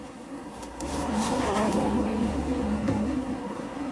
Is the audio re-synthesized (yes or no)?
yes